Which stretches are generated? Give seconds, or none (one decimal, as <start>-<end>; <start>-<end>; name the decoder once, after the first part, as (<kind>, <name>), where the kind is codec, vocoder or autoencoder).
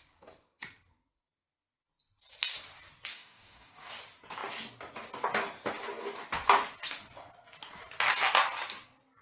3.1-3.9 (codec, DAC)